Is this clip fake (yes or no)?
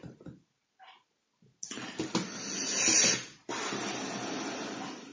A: no